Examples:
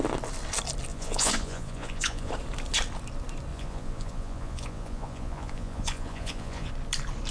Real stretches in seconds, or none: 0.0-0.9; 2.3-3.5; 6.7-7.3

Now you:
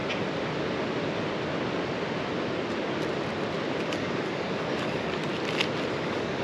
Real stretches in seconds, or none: 0.0-3.8; 5.3-5.9

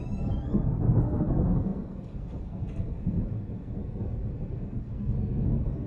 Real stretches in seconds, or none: none

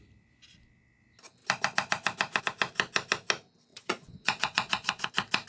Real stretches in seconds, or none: 0.0-3.7; 5.1-5.5

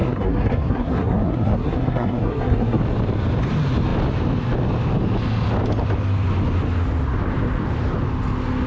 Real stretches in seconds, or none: 2.8-8.7

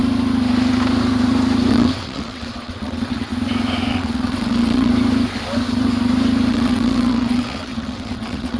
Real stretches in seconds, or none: 0.0-1.7; 3.3-3.9; 4.9-6.5